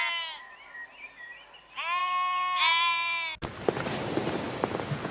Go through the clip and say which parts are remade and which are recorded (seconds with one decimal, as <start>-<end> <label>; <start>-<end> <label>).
0.0-5.1 recorded